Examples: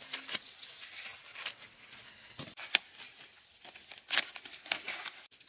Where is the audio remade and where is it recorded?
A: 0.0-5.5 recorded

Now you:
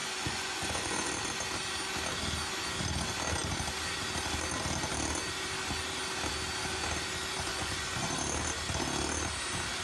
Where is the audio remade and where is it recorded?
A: 0.0-1.1 remade; 1.1-7.5 recorded; 7.5-8.1 remade; 8.1-9.8 recorded

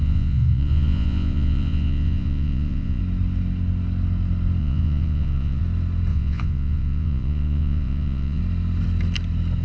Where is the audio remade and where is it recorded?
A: 0.0-3.0 remade; 3.0-4.6 recorded; 4.6-5.6 remade; 5.6-6.1 recorded; 6.1-8.4 remade; 8.4-9.6 recorded

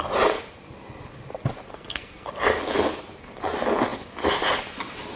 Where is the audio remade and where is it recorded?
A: 0.0-1.7 recorded; 1.7-2.3 remade; 2.3-5.2 recorded

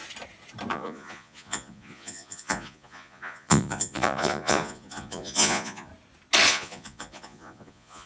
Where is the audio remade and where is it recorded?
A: 0.0-0.7 recorded; 0.7-5.9 remade; 5.9-6.5 recorded; 6.5-8.1 remade

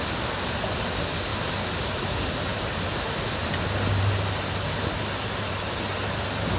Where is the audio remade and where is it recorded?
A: 0.0-1.3 recorded; 1.3-2.0 remade; 2.0-6.6 recorded

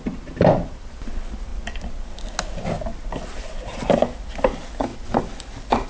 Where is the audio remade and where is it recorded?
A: 0.0-5.9 recorded